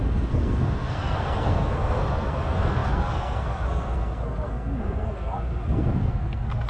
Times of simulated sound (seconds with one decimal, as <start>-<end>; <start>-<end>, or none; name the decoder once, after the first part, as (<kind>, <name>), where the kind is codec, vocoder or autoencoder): 0.0-6.7 (codec, SNAC)